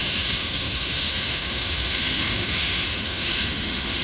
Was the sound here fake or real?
fake